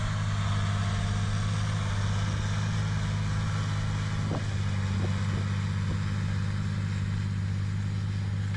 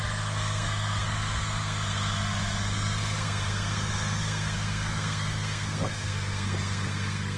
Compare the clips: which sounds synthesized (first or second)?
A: second